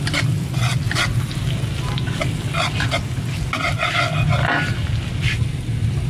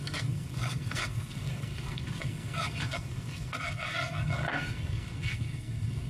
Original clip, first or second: first